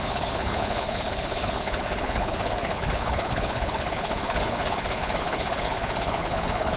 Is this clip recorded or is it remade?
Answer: remade